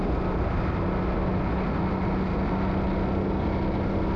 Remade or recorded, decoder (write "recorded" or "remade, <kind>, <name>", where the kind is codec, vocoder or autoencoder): recorded